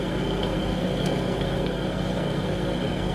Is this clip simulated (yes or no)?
yes